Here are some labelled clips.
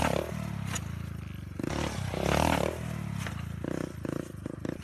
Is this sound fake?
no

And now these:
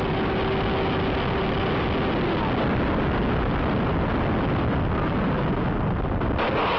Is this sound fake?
no